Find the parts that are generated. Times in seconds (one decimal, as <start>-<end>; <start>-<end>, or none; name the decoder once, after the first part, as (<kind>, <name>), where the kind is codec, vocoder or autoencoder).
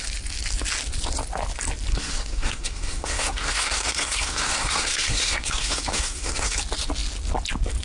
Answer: 1.9-6.6 (codec, SNAC)